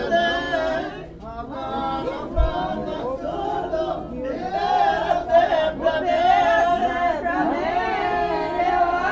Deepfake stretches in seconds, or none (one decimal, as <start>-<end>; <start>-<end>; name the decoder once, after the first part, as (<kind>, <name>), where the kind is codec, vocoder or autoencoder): none